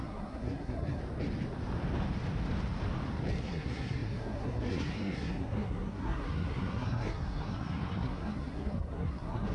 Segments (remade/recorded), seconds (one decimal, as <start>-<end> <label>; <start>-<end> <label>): 0.0-1.0 remade; 1.0-3.3 recorded; 3.3-9.5 remade